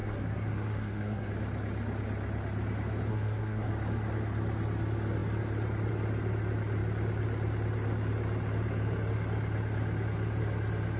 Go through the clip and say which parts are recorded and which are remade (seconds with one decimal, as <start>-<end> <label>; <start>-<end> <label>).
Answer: 0.0-1.3 remade; 1.3-3.1 recorded; 3.1-3.7 remade; 3.7-11.0 recorded